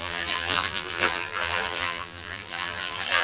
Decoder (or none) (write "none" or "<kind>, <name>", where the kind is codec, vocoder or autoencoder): vocoder, BigVGAN v2